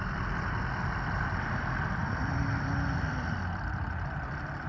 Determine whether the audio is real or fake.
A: fake